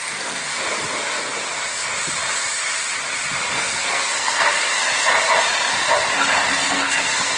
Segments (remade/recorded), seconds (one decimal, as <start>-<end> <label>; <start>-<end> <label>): 0.0-0.5 remade; 0.5-3.5 recorded; 3.5-4.6 remade; 4.6-6.5 recorded; 6.5-7.4 remade